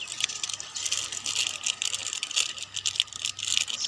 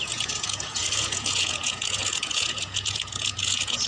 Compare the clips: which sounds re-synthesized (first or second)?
second